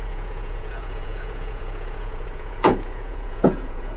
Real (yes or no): no